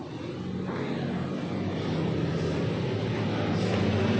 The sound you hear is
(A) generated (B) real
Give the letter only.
B